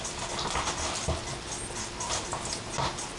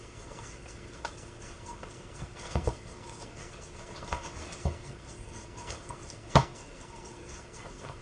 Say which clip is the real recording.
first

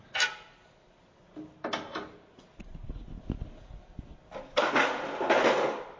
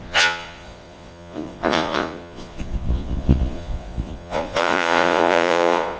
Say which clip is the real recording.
first